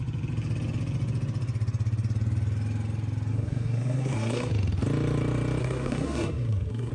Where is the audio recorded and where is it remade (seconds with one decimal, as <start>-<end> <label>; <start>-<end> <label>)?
0.0-3.3 recorded; 3.3-4.5 remade; 4.5-5.6 recorded; 5.6-6.9 remade